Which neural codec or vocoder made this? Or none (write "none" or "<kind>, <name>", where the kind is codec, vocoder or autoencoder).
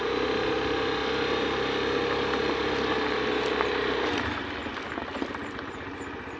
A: none